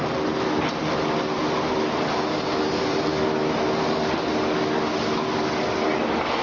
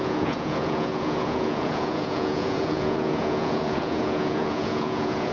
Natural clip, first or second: first